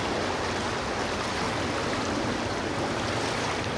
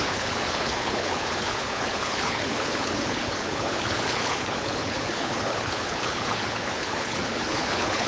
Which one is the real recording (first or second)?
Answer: first